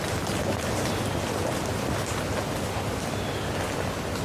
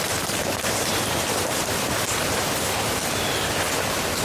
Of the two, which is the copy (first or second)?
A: second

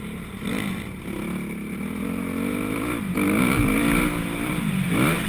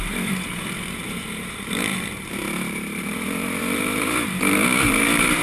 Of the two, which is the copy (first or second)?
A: second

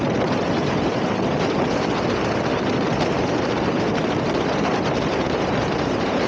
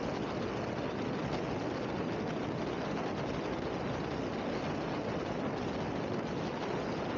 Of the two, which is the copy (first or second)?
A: first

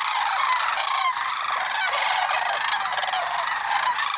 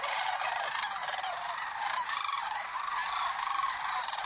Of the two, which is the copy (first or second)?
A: second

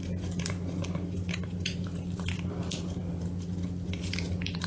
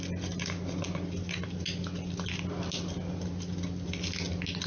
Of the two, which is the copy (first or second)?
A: first